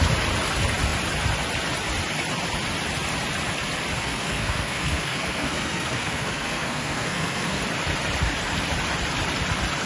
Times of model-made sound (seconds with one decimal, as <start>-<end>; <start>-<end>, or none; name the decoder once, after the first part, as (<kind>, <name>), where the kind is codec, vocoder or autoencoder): 4.0-7.6 (codec, SNAC)